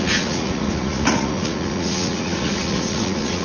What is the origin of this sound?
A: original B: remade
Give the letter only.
B